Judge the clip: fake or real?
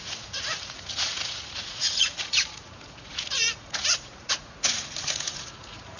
fake